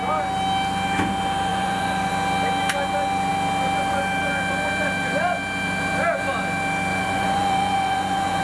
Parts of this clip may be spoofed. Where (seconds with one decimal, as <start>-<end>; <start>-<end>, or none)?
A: 1.5-2.1; 6.9-8.4

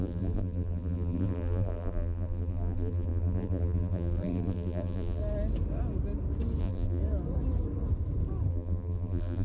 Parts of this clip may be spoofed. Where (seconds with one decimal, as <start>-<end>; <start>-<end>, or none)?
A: 0.0-5.2; 6.6-7.0; 8.5-9.4